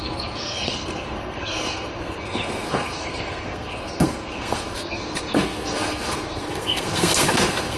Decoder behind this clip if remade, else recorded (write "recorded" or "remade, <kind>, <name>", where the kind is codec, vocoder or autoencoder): remade, codec, SNAC